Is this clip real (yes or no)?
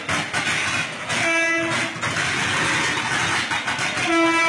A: yes